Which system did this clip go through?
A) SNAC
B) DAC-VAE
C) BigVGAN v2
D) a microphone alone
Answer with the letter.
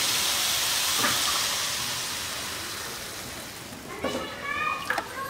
D